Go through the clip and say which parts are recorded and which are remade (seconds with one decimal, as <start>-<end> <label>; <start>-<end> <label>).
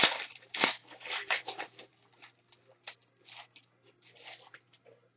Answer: 0.0-0.8 recorded; 0.8-1.9 remade; 1.9-5.2 recorded